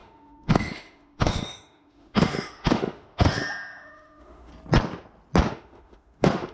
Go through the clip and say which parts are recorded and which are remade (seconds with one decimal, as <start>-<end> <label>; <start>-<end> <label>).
0.0-4.5 remade; 4.5-5.5 recorded; 5.5-6.5 remade